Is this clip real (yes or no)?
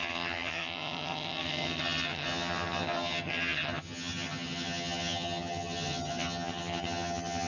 no